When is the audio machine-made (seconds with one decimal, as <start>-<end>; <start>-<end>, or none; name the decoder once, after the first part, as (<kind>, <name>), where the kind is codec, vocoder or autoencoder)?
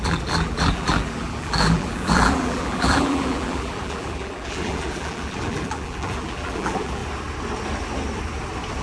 0.0-7.0 (vocoder, BigVGAN v2)